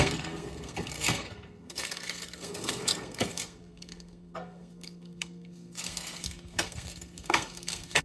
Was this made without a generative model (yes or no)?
no